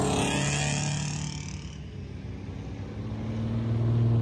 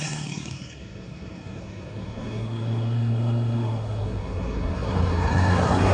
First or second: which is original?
first